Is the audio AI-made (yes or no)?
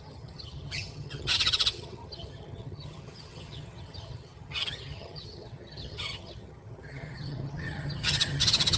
yes